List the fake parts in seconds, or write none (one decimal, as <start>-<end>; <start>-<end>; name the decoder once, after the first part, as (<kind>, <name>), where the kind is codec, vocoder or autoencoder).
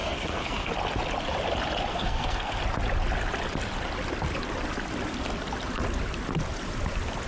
0.0-0.7 (codec, SNAC); 1.9-2.6